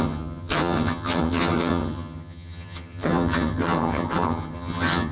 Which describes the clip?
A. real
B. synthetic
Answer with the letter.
B